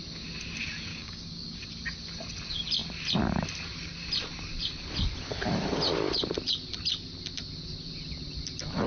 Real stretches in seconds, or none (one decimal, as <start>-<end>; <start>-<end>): 0.0-0.9; 1.6-8.9